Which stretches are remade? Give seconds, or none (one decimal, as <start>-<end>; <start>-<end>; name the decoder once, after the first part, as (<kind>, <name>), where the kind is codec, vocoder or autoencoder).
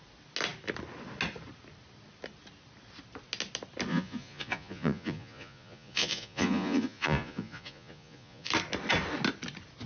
3.9-8.5 (vocoder, Vocos)